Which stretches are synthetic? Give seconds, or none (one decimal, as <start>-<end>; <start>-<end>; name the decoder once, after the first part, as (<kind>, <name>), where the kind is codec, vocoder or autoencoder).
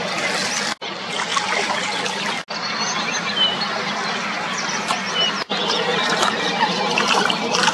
none